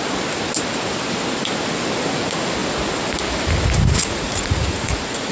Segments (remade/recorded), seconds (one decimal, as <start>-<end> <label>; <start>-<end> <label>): 0.0-4.0 recorded; 4.0-5.3 remade